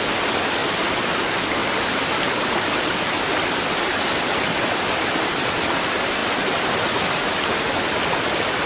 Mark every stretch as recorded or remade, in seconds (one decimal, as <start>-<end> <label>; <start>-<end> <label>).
0.0-8.7 recorded